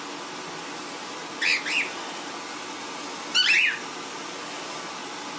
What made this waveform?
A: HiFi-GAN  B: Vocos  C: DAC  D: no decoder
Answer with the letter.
D